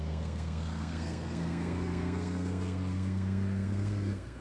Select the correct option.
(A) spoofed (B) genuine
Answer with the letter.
A